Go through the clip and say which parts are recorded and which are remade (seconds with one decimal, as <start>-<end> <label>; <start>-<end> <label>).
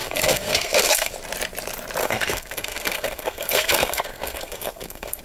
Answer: 0.0-1.1 remade; 1.1-2.0 recorded; 2.0-5.2 remade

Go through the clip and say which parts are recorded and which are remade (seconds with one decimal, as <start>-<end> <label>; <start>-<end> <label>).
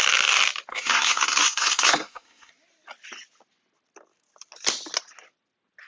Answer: 0.0-0.7 recorded; 0.7-2.5 remade; 2.5-5.9 recorded